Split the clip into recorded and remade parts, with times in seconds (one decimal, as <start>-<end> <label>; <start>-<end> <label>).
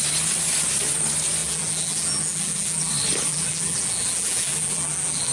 0.0-1.4 recorded; 1.4-2.9 remade; 2.9-3.3 recorded; 3.3-5.3 remade